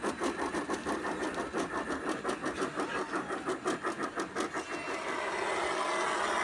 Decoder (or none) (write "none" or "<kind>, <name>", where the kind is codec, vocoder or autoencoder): none